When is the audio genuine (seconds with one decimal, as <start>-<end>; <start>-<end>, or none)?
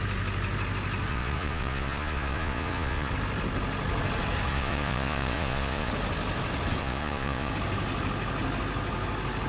0.0-1.1; 3.1-4.5; 5.9-6.8; 7.5-9.5